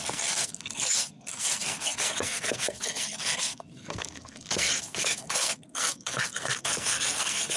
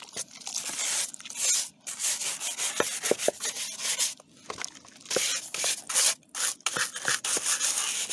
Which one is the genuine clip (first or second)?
second